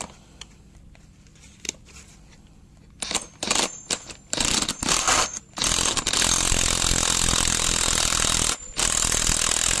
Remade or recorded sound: remade